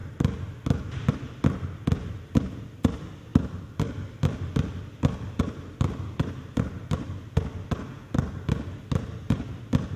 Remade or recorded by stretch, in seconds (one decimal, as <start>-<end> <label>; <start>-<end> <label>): 0.0-1.1 recorded; 1.1-8.0 remade; 8.0-9.0 recorded; 9.0-10.0 remade